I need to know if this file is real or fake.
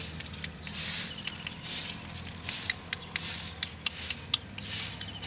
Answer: fake